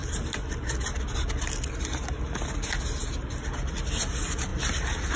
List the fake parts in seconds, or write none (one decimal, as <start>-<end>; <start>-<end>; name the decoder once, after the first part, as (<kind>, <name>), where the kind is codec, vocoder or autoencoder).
none